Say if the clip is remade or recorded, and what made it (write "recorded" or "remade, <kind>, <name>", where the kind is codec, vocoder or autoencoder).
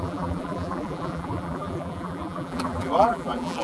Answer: remade, vocoder, BigVGAN v2